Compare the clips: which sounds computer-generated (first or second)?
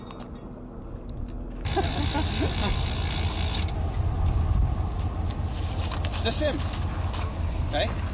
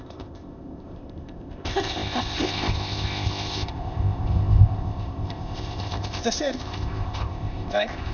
second